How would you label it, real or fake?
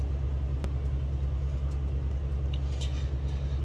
real